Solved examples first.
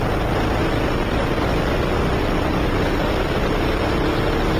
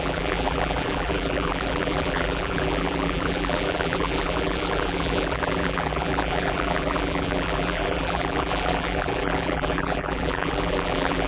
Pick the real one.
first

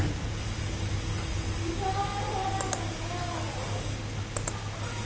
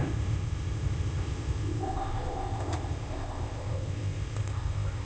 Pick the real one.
first